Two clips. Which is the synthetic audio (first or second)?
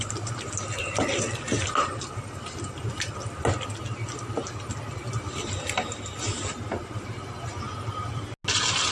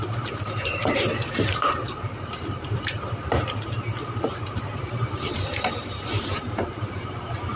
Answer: second